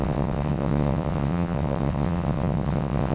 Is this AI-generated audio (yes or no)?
yes